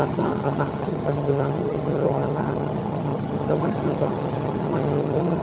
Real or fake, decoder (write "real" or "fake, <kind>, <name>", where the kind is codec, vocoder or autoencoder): fake, vocoder, HiFi-GAN